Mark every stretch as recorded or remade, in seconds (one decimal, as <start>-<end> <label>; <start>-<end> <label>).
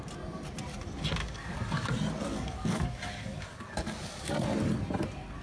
0.0-1.2 recorded; 1.2-1.9 remade; 1.9-2.3 recorded; 2.3-4.3 remade; 4.3-5.4 recorded